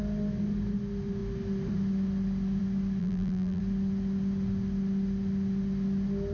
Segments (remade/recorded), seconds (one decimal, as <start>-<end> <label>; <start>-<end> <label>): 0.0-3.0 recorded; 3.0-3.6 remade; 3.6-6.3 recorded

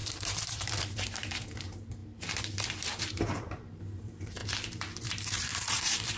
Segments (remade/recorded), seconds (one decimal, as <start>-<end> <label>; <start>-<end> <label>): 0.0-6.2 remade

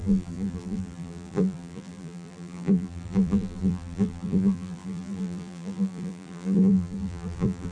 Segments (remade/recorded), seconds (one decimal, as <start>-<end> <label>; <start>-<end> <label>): 0.0-7.7 remade

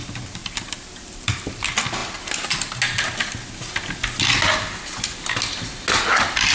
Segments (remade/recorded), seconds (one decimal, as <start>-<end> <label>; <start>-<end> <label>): 0.0-0.4 recorded; 0.4-1.4 remade; 1.4-6.5 recorded

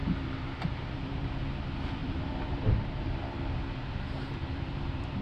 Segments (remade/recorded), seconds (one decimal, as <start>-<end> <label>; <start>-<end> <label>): 0.0-1.4 remade; 1.4-2.0 recorded; 2.0-5.2 remade